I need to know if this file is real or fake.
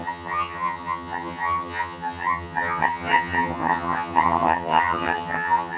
fake